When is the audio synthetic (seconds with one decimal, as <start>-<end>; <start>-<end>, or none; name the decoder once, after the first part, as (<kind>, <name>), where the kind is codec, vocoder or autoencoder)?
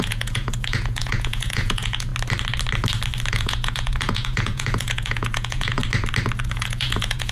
0.0-2.1 (vocoder, Vocos); 3.3-5.8; 6.4-7.3